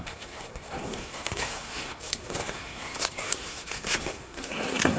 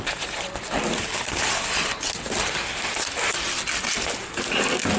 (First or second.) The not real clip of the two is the first